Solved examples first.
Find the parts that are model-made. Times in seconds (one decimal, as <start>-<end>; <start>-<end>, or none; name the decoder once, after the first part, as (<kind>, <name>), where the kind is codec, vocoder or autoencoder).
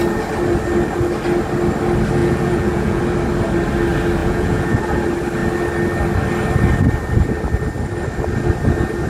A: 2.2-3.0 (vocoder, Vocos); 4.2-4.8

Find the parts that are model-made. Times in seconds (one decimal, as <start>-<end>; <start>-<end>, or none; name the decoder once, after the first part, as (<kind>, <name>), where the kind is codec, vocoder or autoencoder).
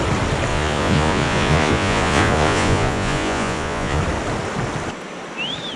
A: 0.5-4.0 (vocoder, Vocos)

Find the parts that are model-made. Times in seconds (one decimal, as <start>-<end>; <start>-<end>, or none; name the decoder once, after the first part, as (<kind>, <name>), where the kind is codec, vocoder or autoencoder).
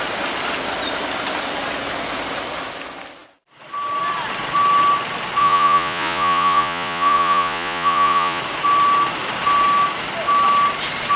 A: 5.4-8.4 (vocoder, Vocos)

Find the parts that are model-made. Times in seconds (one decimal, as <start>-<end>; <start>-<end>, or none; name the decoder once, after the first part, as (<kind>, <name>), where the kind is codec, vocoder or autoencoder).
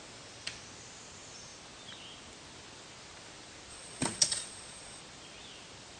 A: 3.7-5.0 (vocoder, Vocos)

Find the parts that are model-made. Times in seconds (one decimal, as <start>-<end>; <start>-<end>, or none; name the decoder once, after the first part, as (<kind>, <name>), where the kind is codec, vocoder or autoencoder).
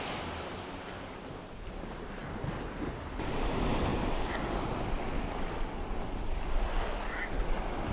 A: none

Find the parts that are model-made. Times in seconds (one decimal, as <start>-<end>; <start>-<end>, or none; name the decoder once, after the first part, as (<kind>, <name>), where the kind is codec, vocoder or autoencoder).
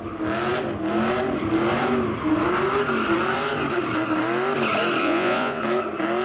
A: 5.0-5.6 (vocoder, Vocos)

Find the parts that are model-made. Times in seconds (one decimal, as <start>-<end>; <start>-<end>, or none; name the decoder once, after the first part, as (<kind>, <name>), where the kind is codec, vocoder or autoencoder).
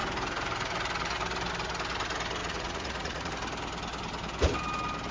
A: 2.4-3.3 (vocoder, Vocos)